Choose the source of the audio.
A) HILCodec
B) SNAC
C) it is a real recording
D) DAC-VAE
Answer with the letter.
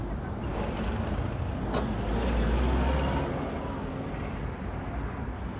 C